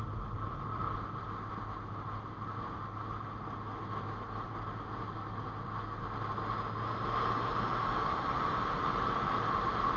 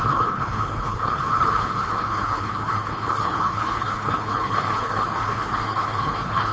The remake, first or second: second